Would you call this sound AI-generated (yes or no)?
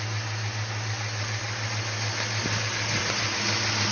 no